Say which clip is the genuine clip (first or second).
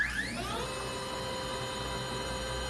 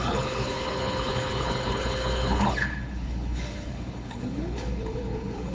first